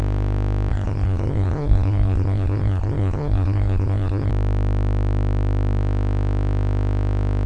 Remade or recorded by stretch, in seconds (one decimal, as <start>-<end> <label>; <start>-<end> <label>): 0.0-0.7 recorded; 0.7-4.3 remade; 4.3-7.5 recorded